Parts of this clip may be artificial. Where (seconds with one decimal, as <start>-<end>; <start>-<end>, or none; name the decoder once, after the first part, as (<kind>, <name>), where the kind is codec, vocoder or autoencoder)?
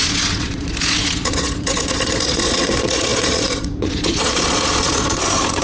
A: 0.0-5.6 (vocoder, Vocos)